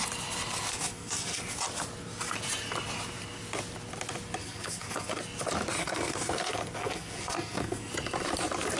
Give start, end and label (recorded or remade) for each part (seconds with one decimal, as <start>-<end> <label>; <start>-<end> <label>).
0.0-0.7 recorded; 0.7-1.4 remade; 1.4-4.4 recorded; 4.4-5.2 remade; 5.2-5.8 recorded; 5.8-7.9 remade; 7.9-8.8 recorded